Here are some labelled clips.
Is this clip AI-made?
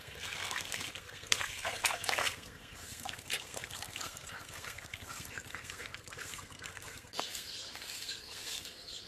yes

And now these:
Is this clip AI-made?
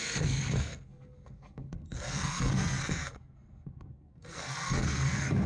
yes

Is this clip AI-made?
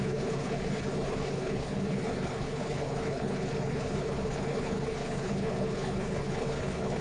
yes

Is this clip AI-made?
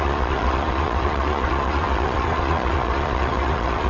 yes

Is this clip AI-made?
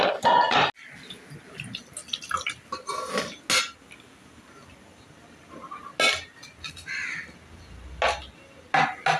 no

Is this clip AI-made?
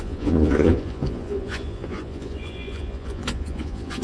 yes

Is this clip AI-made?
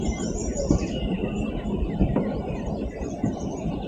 yes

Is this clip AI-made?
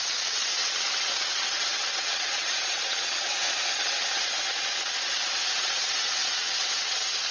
yes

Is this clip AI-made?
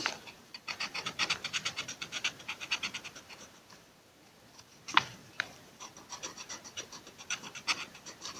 yes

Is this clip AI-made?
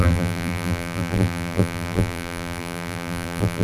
yes